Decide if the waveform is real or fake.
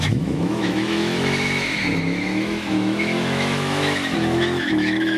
fake